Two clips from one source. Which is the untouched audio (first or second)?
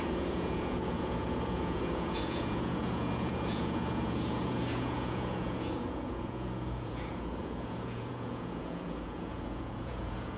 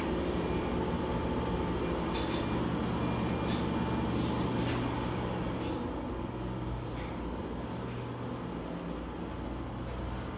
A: second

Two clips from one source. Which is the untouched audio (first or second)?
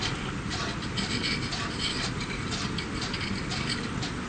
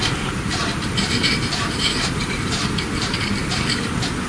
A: first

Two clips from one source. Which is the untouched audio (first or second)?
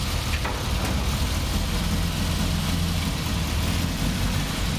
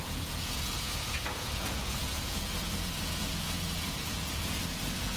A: first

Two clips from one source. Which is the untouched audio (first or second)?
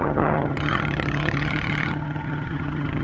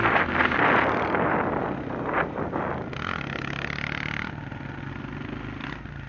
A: second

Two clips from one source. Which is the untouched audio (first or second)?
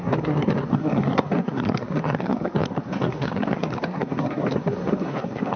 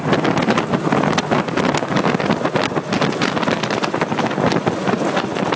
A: second